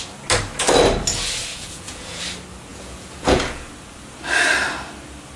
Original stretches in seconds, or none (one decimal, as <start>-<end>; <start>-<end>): 0.0-1.5; 2.2-2.7; 3.7-5.4